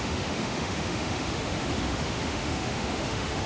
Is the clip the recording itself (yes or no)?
no